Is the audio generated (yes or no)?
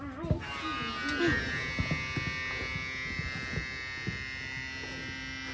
no